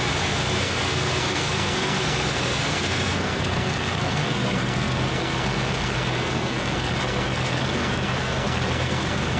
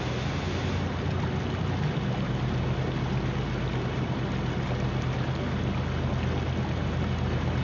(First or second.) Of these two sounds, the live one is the second